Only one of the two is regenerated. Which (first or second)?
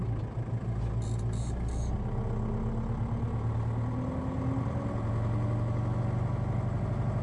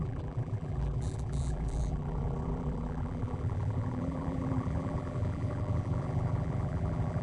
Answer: second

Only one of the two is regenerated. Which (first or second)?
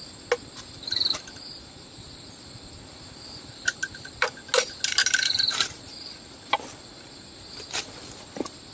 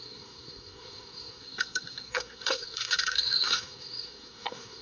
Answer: second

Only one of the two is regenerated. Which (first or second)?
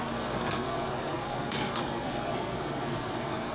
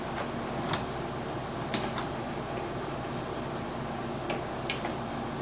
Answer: first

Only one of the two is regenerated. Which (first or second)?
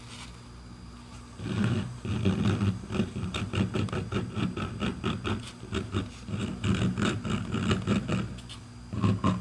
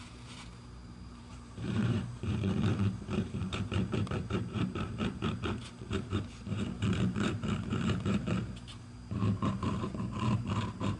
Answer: second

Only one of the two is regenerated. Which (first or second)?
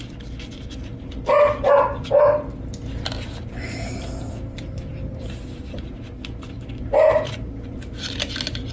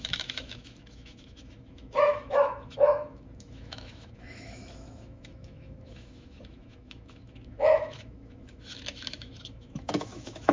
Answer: second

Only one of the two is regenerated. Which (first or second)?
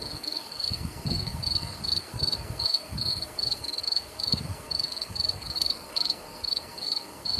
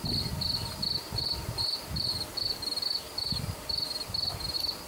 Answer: first